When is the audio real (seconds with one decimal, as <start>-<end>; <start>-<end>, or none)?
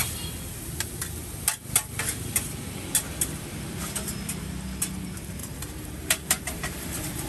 0.0-5.4